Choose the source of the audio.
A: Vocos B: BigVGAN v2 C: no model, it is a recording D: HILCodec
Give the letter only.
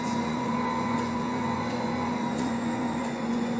A